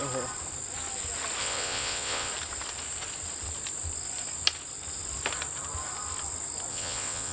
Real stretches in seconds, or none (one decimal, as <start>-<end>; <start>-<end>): 0.0-1.4; 2.3-6.7